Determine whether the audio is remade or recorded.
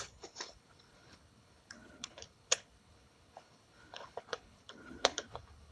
remade